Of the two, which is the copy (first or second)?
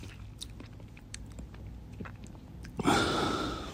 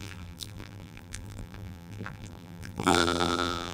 second